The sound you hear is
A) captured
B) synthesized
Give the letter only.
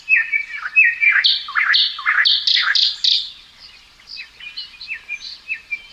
A